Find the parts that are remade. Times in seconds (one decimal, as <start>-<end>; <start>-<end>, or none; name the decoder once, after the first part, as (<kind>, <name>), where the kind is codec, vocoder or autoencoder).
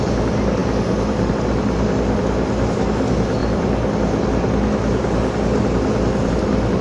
none